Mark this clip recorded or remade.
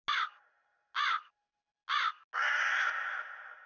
recorded